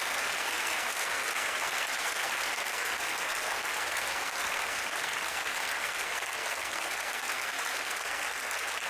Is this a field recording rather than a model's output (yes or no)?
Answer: no